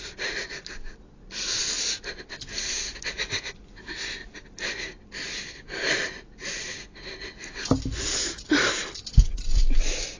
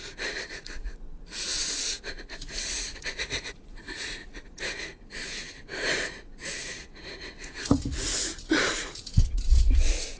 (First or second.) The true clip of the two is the first